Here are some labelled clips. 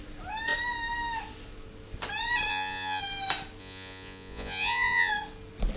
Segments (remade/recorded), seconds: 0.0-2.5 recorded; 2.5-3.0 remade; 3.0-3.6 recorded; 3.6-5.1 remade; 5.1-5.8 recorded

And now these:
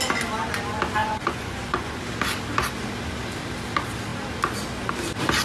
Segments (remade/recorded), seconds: 0.0-1.0 recorded; 1.0-2.0 remade; 2.0-5.4 recorded

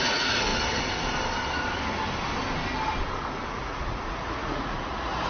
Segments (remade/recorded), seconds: 0.0-0.5 remade; 0.5-3.5 recorded; 3.5-5.3 remade

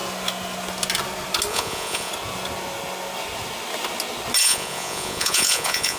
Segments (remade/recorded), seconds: 0.0-1.5 recorded; 1.5-2.1 remade; 2.1-4.4 recorded; 4.4-6.0 remade